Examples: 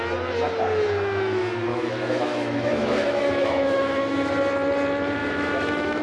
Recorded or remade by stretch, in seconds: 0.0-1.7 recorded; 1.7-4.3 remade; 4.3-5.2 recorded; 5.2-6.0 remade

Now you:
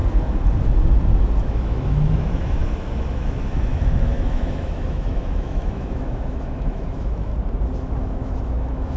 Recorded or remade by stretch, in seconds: 0.0-1.4 recorded; 1.4-7.3 remade; 7.3-7.8 recorded; 7.8-9.0 remade